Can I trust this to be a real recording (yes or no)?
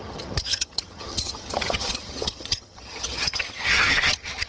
no